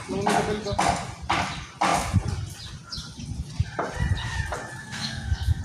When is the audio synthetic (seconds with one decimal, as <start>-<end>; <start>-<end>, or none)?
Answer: 4.8-5.6